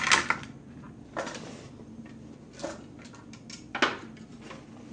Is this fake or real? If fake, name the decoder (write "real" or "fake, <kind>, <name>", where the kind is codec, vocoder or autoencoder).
real